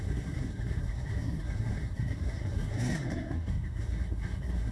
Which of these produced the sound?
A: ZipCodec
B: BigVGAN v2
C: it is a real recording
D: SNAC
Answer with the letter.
D